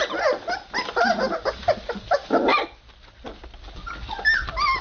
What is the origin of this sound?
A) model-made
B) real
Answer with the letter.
B